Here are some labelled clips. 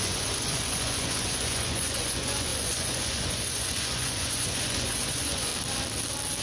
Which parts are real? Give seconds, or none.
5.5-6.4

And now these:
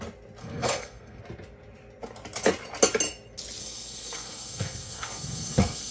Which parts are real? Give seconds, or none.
0.0-0.4; 1.2-3.6

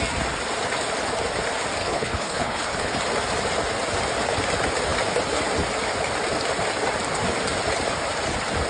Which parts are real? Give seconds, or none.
0.0-1.8; 3.0-8.7

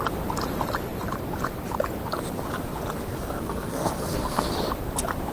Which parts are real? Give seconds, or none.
0.0-3.2; 4.5-5.3

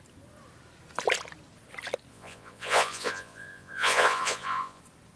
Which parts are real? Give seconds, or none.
0.0-2.1; 4.8-5.2

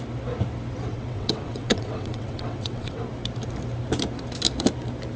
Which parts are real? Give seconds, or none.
0.0-0.9; 3.0-5.2